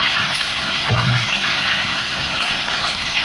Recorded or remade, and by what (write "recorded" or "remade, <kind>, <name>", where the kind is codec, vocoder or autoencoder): remade, codec, SNAC